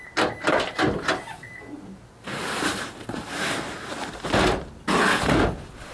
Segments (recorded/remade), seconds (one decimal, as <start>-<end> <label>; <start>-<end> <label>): 0.0-5.9 recorded